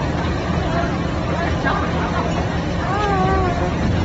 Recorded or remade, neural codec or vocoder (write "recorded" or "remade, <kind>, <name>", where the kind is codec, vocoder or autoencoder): recorded